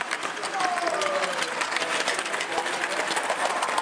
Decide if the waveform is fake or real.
real